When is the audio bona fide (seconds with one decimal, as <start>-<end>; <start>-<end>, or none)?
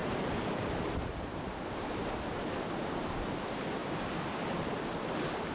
2.5-5.5